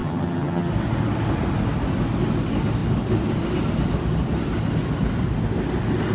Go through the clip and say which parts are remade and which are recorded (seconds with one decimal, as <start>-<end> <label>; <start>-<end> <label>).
0.0-0.7 remade; 0.7-6.1 recorded